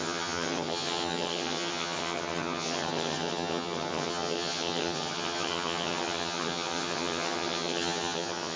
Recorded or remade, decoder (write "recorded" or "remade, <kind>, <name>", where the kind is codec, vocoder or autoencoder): remade, vocoder, HiFi-GAN